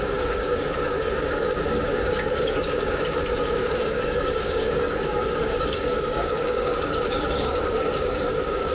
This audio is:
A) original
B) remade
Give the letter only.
B